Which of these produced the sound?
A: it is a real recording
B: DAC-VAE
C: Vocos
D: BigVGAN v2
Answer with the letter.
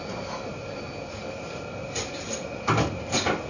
A